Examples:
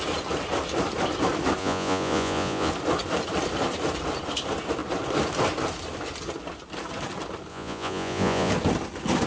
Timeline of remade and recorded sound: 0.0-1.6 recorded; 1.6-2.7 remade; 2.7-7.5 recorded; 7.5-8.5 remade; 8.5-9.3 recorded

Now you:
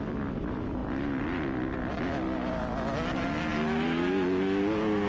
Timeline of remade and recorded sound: 0.0-5.1 recorded

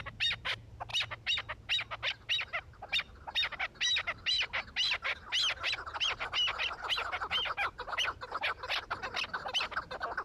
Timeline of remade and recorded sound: 0.0-10.2 recorded

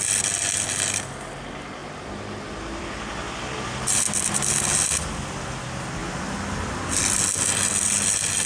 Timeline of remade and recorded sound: 0.0-1.8 recorded; 1.8-4.5 remade; 4.5-6.0 recorded; 6.0-7.0 remade; 7.0-8.5 recorded

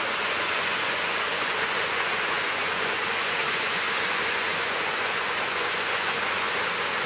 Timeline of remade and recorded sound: 0.0-7.1 remade